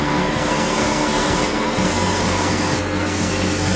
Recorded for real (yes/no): no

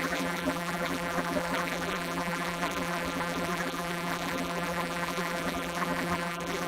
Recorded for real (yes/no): no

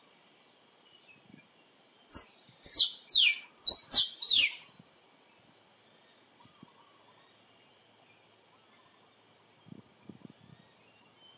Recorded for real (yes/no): yes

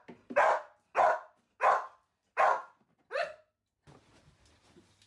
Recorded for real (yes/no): yes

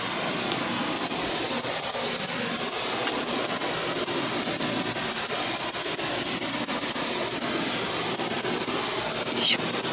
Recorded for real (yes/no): yes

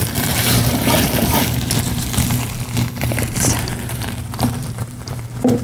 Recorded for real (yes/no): no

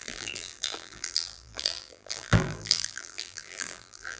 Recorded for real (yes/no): no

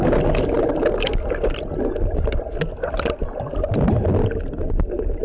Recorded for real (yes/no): yes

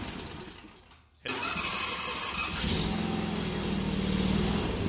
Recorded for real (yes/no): yes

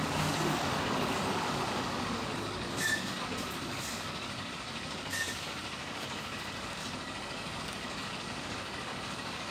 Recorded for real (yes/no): no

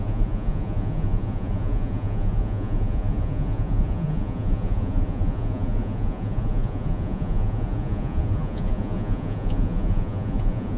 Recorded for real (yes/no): no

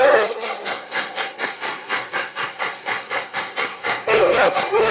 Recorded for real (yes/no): no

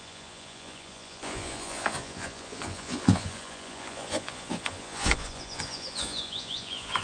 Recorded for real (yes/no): no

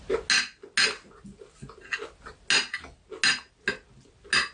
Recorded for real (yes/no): yes